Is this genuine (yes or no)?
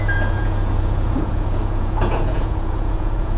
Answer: no